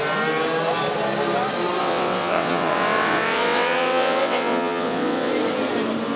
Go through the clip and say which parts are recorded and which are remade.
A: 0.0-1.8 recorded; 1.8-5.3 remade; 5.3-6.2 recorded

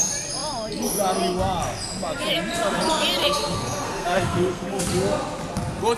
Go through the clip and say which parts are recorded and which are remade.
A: 0.0-3.2 recorded; 3.2-4.8 remade; 4.8-6.0 recorded